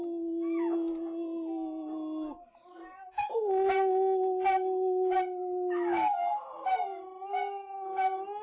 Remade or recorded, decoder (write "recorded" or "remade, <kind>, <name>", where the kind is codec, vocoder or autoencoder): recorded